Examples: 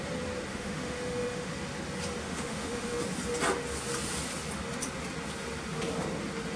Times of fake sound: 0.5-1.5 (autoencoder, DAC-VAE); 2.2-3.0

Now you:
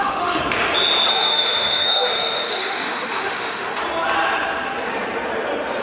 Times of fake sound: 0.0-0.4 (autoencoder, DAC-VAE); 1.1-3.8

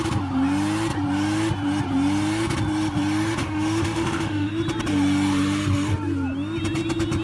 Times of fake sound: 3.4-4.5 (autoencoder, DAC-VAE)

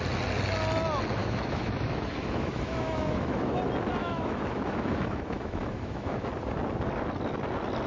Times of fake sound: 1.2-3.6 (autoencoder, DAC-VAE); 4.0-6.3

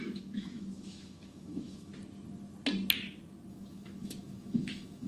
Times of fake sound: 0.0-1.9 (autoencoder, DAC-VAE); 3.5-5.1